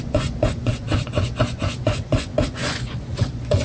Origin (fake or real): fake